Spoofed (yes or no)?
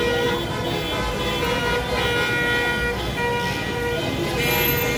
no